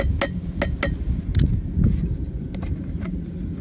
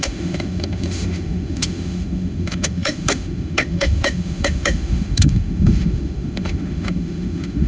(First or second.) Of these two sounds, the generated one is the second